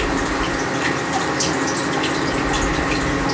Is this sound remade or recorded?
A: recorded